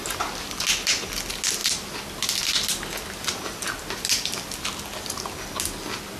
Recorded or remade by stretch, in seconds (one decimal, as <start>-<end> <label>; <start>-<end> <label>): 0.0-6.2 recorded